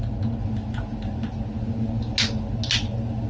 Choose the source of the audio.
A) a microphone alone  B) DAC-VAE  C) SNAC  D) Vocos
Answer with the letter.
A